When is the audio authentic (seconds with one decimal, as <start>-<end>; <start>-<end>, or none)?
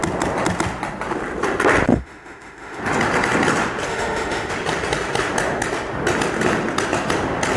0.0-1.9; 2.8-3.9; 4.5-7.6